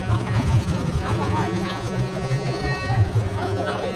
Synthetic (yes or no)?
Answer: yes